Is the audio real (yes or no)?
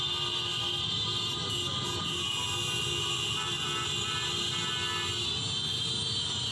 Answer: yes